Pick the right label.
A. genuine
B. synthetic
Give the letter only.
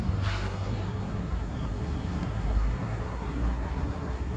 B